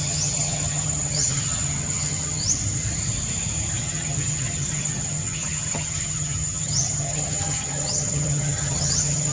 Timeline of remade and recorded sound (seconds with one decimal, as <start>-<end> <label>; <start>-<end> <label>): 0.0-2.4 remade; 2.4-3.8 recorded; 3.8-9.3 remade